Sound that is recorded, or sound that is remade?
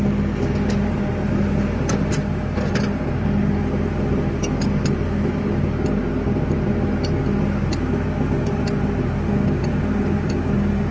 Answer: recorded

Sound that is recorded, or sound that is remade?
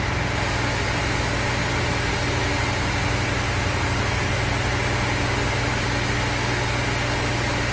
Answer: recorded